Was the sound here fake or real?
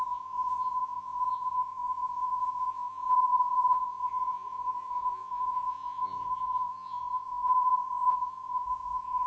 fake